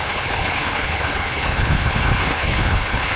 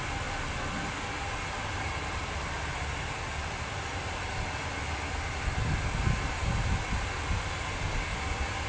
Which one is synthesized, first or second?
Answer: first